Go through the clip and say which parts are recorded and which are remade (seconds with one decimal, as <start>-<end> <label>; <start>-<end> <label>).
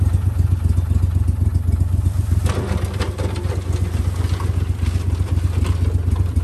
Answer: 0.0-6.4 recorded